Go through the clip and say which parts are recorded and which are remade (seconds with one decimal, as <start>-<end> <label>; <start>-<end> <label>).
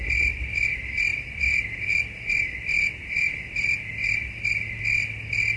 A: 0.0-5.6 recorded